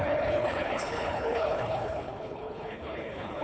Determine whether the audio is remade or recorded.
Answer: remade